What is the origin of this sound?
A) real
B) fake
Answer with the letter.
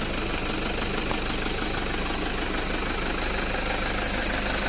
A